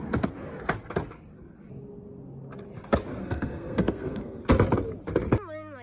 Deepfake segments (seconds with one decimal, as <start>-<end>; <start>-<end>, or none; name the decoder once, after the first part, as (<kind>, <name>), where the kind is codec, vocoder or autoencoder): 3.2-4.4 (codec, SNAC)